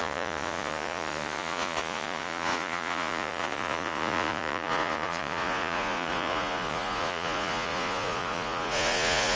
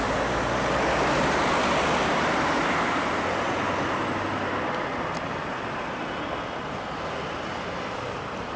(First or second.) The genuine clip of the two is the second